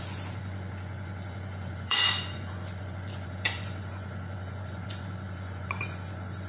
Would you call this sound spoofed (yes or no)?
yes